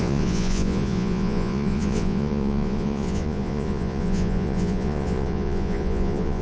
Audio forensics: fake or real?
fake